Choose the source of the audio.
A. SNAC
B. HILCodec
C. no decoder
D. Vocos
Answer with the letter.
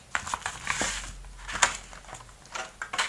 C